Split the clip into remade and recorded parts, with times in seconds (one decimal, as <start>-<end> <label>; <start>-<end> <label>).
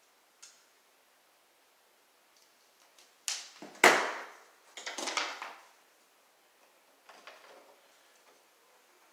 0.0-9.1 recorded